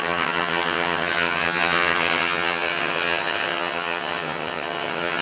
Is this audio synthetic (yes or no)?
yes